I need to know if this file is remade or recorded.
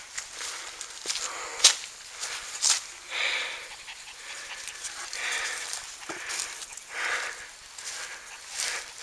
recorded